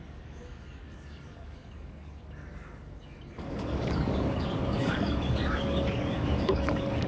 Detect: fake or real fake